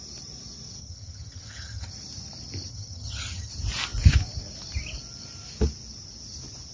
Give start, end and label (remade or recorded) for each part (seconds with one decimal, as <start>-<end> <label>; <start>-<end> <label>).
0.0-0.8 recorded; 0.8-1.9 remade; 1.9-2.7 recorded; 2.7-3.5 remade; 3.5-6.7 recorded